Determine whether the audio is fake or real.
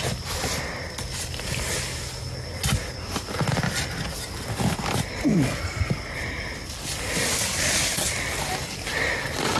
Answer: real